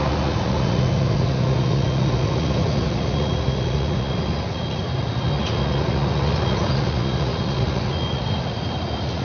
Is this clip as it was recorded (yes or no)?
no